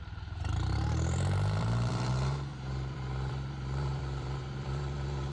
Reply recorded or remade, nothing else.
remade